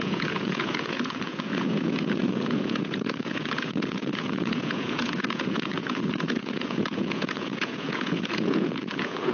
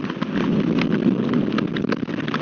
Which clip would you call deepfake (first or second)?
first